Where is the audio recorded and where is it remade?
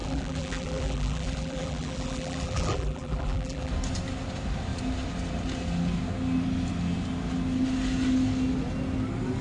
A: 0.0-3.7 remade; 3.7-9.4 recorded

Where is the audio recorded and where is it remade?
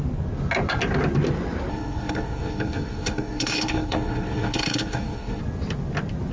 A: 0.0-1.7 recorded; 1.7-5.4 remade; 5.4-6.3 recorded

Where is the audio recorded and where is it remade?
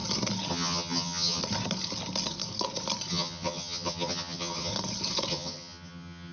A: 0.0-0.5 recorded; 0.5-1.4 remade; 1.4-3.1 recorded; 3.1-4.7 remade; 4.7-5.3 recorded; 5.3-6.3 remade